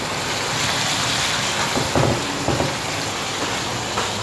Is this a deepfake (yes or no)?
no